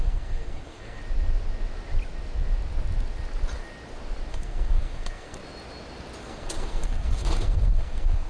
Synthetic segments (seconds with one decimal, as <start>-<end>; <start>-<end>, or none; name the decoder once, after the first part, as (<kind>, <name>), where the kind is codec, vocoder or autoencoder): 0.0-1.0 (codec, SNAC); 4.3-5.4; 6.2-8.3